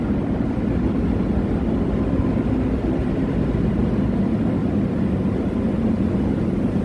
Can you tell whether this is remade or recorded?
recorded